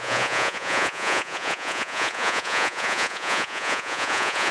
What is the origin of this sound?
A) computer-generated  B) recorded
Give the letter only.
A